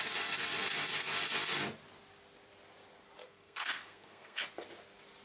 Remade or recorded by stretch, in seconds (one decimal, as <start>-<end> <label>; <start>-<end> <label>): 0.0-3.2 recorded; 3.2-4.5 remade; 4.5-5.2 recorded